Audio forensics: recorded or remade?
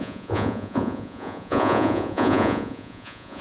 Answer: remade